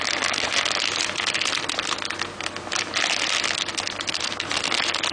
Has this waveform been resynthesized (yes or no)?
no